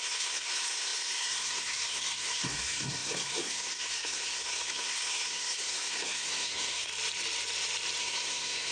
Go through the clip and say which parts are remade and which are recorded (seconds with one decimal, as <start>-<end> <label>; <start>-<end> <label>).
0.0-6.9 remade; 6.9-8.0 recorded; 8.0-8.7 remade